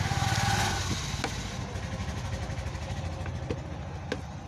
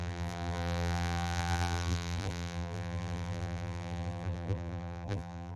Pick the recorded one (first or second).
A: first